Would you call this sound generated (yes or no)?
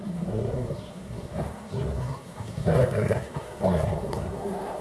yes